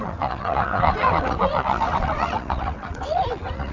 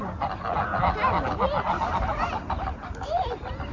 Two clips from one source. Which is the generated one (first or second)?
first